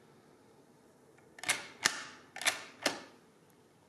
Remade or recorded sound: recorded